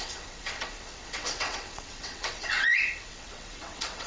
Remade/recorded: remade